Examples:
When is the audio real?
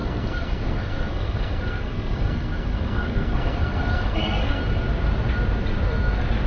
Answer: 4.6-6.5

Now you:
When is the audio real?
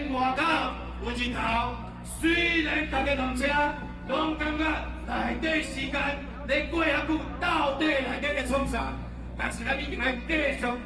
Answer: 2.2-2.8; 4.6-7.7